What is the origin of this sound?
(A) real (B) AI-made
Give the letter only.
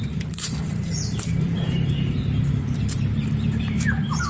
B